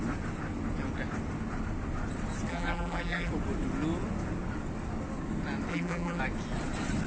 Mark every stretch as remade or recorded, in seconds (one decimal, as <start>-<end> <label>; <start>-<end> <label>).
0.0-2.5 recorded; 2.5-3.3 remade; 3.3-5.7 recorded; 5.7-6.2 remade; 6.2-7.1 recorded